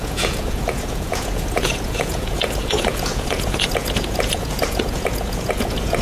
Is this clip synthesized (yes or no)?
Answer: yes